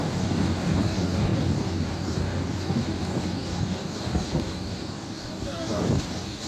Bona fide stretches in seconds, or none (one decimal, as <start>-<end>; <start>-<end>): none